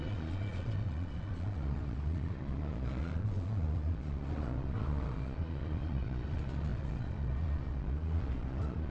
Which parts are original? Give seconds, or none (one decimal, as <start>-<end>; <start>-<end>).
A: none